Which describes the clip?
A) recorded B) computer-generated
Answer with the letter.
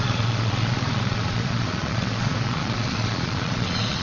B